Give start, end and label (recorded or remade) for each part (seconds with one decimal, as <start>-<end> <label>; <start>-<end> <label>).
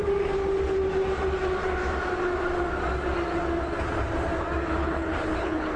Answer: 0.0-4.8 recorded; 4.8-5.8 remade